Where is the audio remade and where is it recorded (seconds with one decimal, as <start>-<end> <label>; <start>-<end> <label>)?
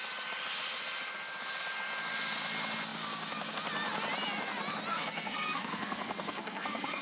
0.0-4.9 recorded; 4.9-7.0 remade